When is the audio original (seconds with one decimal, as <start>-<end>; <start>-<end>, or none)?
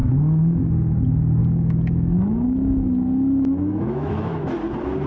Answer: 0.7-1.4; 4.5-5.1